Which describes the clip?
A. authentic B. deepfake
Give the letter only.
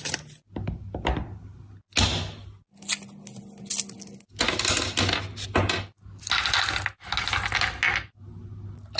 A